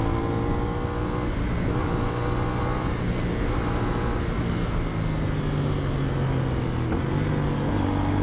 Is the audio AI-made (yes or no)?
no